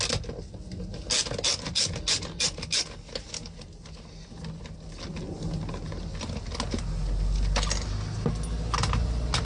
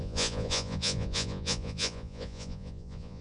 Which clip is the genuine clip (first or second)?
first